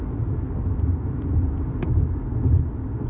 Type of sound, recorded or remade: recorded